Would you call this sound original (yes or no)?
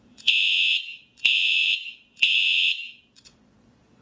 no